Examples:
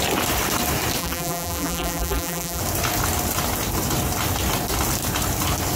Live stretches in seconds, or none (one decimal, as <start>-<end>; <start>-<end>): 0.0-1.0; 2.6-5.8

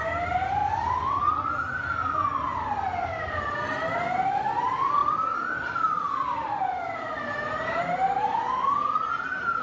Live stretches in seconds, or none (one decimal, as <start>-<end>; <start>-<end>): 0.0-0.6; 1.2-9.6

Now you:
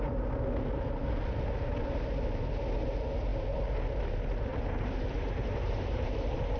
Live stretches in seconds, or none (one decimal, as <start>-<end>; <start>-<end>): 0.0-4.5

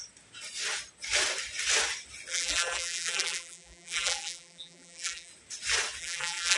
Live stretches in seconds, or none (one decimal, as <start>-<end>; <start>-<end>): 0.0-2.3; 5.3-6.0

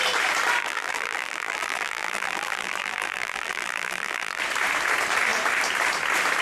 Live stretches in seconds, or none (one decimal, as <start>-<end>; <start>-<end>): 0.0-0.6; 4.4-6.4

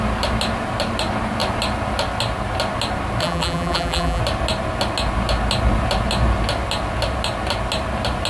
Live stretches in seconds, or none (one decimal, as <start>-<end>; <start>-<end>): 0.0-3.2; 4.2-8.3

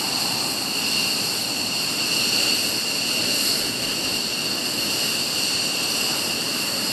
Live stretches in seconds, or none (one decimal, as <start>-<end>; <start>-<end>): 0.0-1.9; 2.7-6.9